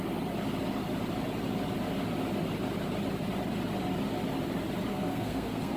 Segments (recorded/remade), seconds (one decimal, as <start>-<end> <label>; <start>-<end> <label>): 0.0-4.9 recorded; 4.9-5.8 remade